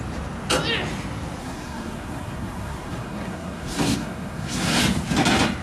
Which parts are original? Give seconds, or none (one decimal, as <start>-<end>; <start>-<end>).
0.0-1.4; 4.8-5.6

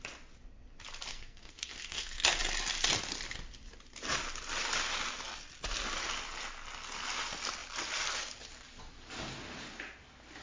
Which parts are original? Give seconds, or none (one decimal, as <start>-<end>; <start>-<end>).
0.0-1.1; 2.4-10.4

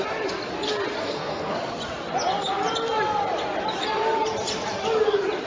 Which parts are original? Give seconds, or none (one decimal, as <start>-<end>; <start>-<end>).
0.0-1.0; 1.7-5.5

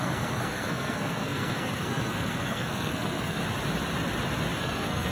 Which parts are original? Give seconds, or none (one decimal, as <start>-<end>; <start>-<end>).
3.4-4.6

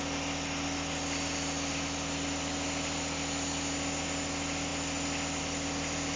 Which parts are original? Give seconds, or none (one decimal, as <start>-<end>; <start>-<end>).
0.0-6.2

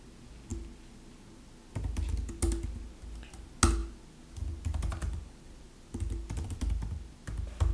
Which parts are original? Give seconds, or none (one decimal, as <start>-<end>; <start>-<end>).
0.0-7.7

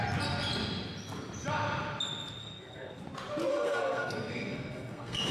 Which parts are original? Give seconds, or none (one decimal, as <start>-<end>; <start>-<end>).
0.0-2.4; 3.0-3.5

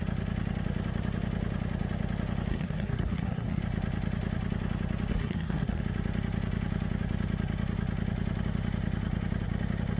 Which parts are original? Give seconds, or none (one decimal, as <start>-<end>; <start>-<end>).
0.0-2.5; 3.6-5.1; 5.8-10.0